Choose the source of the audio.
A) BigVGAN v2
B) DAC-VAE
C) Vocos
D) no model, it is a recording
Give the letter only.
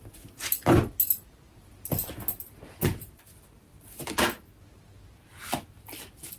D